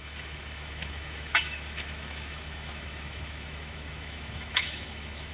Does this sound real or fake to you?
fake